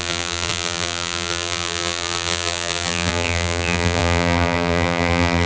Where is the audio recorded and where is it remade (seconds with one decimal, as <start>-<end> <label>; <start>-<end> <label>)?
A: 0.0-5.5 remade